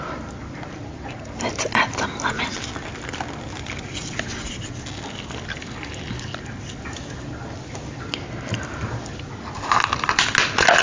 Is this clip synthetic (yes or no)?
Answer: no